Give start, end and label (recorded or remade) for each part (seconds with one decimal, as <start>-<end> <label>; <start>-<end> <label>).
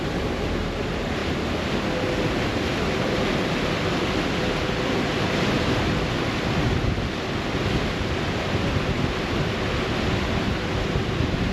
0.0-11.5 recorded